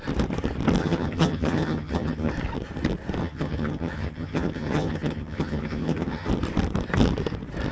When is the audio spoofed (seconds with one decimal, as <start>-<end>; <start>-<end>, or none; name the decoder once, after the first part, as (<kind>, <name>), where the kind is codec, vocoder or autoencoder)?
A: 0.8-2.3 (vocoder, HiFi-GAN); 3.2-6.3